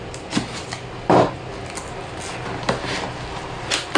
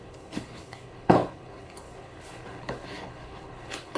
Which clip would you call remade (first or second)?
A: second